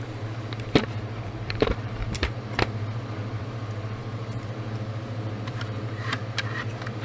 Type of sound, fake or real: fake